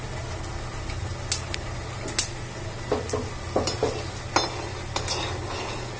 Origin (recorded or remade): recorded